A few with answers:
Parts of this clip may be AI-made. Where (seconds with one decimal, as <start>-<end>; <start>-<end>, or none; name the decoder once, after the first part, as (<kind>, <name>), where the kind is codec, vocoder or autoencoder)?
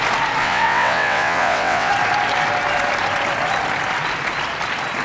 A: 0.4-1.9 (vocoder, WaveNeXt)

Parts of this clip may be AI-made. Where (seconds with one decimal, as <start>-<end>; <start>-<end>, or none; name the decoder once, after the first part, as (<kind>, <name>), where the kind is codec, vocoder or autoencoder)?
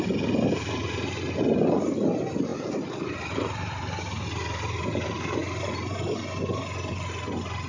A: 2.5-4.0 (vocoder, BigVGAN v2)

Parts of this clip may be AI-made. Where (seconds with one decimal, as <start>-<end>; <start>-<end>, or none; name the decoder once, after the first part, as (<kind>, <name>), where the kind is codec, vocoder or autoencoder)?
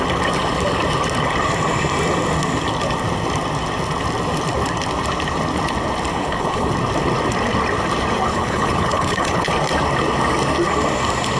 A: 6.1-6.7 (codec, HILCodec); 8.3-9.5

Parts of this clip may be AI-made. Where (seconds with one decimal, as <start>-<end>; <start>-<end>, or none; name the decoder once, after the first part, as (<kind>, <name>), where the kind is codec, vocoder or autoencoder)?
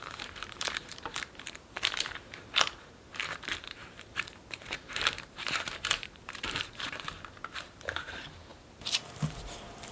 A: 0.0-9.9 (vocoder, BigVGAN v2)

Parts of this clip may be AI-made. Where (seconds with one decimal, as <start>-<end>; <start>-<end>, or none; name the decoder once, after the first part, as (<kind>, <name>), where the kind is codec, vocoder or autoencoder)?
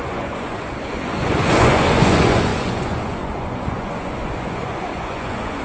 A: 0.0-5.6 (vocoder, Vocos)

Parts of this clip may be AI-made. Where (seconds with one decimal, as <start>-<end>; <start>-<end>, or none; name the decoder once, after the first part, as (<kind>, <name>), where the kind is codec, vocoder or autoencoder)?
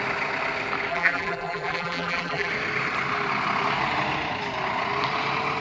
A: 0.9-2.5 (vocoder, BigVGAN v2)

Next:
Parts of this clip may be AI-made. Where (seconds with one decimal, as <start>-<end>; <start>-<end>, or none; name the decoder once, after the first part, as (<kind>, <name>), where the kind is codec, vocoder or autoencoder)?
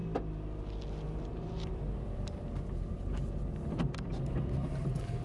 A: none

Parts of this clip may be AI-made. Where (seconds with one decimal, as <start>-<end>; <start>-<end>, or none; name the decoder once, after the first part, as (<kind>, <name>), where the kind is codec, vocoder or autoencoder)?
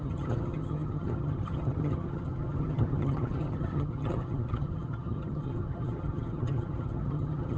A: 0.0-7.6 (vocoder, HiFi-GAN)